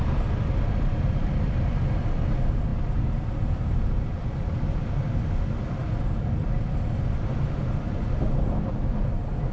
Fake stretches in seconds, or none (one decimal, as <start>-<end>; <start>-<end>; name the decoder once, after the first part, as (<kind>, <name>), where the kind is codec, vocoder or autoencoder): none

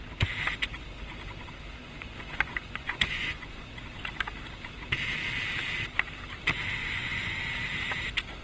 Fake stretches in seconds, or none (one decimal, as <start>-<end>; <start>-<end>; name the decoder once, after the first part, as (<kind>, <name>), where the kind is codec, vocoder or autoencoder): 1.8-3.8 (vocoder, Vocos); 6.8-7.4